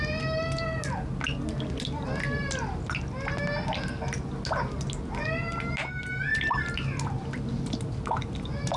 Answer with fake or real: real